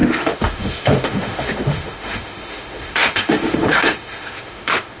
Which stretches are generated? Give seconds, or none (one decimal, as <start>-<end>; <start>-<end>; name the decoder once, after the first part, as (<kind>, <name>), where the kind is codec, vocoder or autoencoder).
0.0-5.0 (autoencoder, DAC-VAE)